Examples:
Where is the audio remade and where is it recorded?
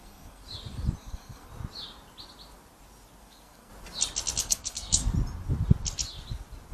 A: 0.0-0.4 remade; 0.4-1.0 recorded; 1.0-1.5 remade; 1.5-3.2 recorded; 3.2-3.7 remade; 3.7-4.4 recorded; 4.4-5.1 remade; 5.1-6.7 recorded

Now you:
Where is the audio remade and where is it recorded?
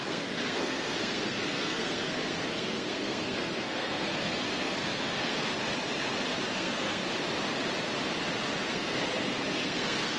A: 0.0-5.5 remade; 5.5-6.5 recorded; 6.5-7.0 remade; 7.0-8.7 recorded; 8.7-10.2 remade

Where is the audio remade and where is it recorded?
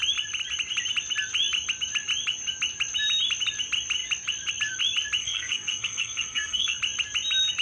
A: 0.0-5.2 recorded; 5.2-6.8 remade; 6.8-7.6 recorded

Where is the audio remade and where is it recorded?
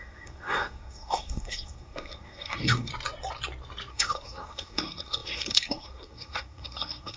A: 0.0-2.9 remade; 2.9-3.9 recorded; 3.9-7.2 remade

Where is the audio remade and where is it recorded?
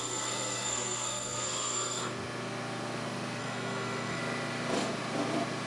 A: 0.0-2.0 remade; 2.0-3.4 recorded; 3.4-4.2 remade; 4.2-5.7 recorded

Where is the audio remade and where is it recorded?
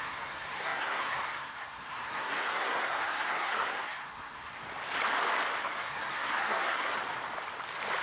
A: 0.0-4.5 remade; 4.5-5.6 recorded; 5.6-6.9 remade; 6.9-8.0 recorded